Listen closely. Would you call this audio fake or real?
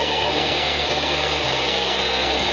fake